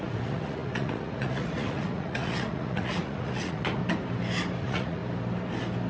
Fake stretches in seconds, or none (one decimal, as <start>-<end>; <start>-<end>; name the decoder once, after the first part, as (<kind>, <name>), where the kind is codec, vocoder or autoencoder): 0.0-3.8 (vocoder, Vocos); 4.6-5.0